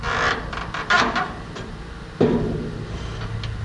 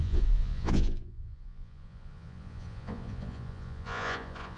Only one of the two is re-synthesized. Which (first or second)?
second